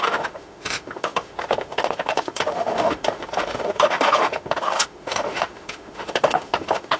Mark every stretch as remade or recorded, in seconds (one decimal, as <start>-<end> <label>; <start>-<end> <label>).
0.0-7.0 remade